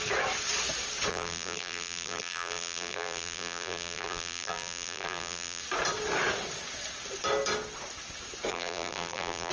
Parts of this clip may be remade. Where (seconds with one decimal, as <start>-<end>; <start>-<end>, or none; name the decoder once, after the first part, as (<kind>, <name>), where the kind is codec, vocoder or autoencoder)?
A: 1.1-5.6 (vocoder, BigVGAN v2); 8.5-9.5